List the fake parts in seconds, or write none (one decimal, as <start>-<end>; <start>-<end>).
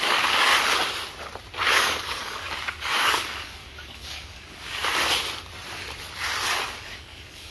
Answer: 0.0-0.5; 1.7-4.8; 6.6-7.5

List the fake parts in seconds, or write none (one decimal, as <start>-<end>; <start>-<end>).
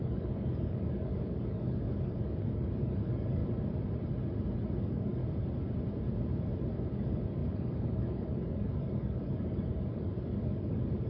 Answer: 0.0-3.4; 4.8-5.2; 6.9-11.1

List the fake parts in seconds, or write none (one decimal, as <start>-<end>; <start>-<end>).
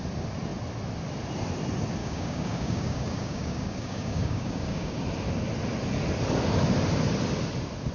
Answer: 2.0-5.0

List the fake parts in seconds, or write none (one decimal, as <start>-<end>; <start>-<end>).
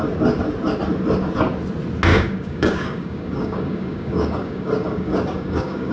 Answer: 2.1-5.9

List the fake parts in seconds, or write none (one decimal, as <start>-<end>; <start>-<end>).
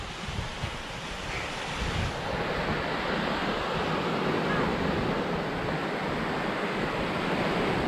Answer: none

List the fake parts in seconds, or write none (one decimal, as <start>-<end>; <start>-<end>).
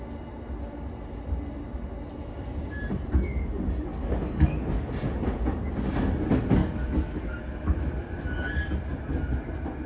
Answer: 3.9-4.9; 6.6-7.2